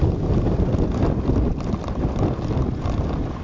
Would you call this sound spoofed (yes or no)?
no